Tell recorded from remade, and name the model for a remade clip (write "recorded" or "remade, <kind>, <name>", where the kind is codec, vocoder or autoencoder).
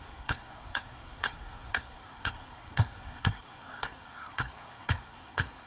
remade, codec, SNAC